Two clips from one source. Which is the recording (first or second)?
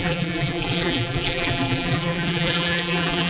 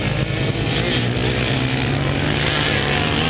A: second